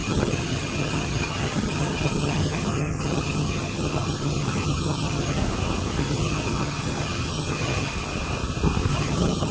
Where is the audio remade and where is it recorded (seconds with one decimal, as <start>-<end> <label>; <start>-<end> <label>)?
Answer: 0.0-5.4 remade; 5.4-6.0 recorded; 6.0-7.9 remade; 7.9-8.9 recorded; 8.9-9.5 remade